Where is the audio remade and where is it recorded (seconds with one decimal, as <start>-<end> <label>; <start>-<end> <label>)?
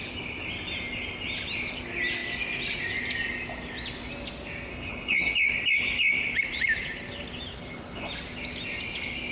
0.0-4.7 recorded; 4.7-5.3 remade; 5.3-7.5 recorded; 7.5-8.1 remade; 8.1-9.3 recorded